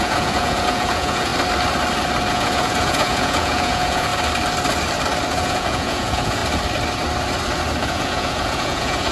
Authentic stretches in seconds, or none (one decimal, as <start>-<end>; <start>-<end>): 1.3-2.3; 4.1-5.3; 6.4-7.8